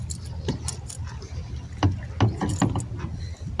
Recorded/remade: recorded